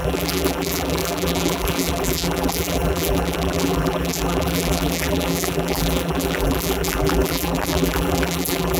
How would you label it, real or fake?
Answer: fake